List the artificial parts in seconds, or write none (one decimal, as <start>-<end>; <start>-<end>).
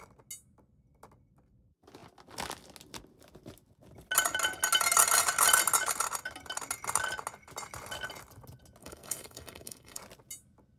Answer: 8.8-10.0